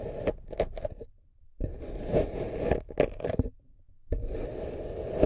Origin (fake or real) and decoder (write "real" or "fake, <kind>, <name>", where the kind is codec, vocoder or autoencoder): real